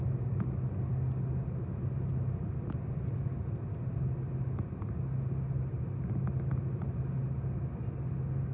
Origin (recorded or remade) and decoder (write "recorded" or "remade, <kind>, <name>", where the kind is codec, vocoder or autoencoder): recorded